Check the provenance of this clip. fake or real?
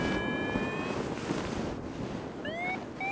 real